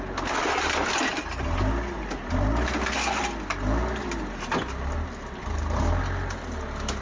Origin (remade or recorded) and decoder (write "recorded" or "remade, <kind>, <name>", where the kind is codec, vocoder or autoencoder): recorded